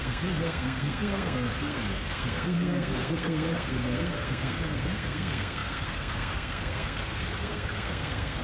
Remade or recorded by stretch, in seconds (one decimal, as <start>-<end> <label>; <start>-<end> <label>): 0.0-8.4 remade